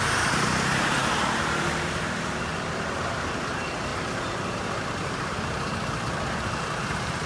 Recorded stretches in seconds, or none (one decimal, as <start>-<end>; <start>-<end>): none